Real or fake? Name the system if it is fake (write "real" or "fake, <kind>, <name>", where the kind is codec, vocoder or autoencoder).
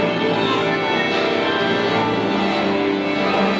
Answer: real